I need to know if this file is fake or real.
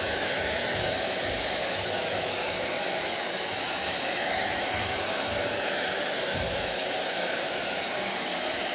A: fake